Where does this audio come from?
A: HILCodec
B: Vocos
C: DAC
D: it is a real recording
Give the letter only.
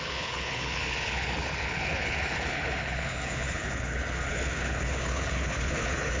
A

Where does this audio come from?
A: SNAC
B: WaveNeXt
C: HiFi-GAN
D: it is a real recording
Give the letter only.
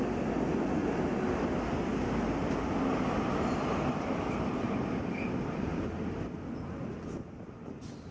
D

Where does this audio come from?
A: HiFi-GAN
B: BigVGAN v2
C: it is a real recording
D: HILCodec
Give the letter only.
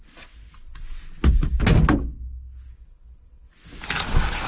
C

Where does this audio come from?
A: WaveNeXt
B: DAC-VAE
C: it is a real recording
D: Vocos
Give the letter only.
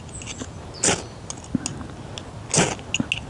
C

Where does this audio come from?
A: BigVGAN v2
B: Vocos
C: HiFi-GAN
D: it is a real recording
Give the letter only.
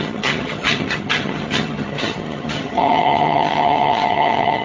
C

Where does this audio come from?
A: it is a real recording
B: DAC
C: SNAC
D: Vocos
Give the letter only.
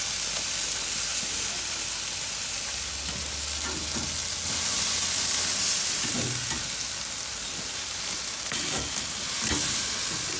A